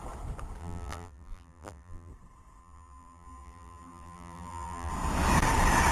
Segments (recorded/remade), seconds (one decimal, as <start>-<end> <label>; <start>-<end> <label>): 0.0-0.6 recorded; 0.6-2.1 remade; 2.1-2.6 recorded; 2.6-4.9 remade; 4.9-5.9 recorded